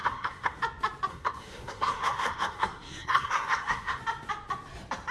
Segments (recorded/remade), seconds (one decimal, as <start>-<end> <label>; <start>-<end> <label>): 0.0-0.6 remade; 0.6-1.1 recorded; 1.1-4.0 remade; 4.0-5.1 recorded